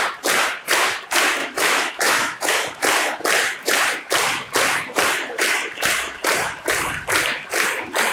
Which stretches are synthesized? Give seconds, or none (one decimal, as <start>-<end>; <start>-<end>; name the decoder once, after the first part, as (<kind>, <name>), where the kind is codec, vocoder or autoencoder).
1.4-2.5 (autoencoder, DAC-VAE)